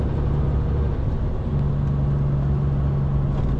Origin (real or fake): real